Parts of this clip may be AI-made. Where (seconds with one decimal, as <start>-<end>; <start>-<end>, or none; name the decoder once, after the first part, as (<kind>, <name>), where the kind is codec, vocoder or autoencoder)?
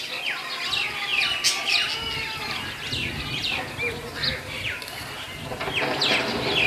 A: none